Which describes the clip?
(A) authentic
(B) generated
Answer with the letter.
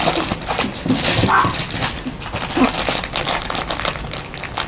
A